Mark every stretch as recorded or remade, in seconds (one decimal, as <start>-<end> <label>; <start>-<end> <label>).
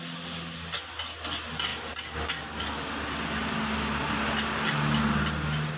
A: 0.0-5.8 recorded